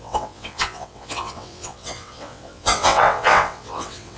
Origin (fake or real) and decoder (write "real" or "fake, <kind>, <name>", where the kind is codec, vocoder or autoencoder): fake, vocoder, WaveNeXt